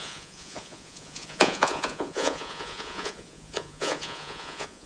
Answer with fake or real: fake